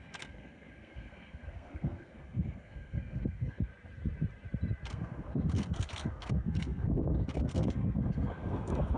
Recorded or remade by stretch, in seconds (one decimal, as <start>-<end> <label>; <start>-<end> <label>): 0.0-3.7 remade; 3.7-4.9 recorded; 4.9-9.0 remade

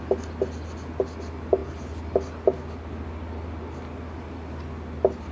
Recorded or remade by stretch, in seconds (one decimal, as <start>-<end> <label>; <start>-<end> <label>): 0.0-5.3 recorded

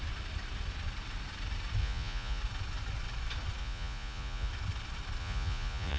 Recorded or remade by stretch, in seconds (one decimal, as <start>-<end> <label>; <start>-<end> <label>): 0.0-1.8 recorded; 1.8-2.4 remade; 2.4-3.6 recorded; 3.6-4.5 remade; 4.5-5.2 recorded; 5.2-6.0 remade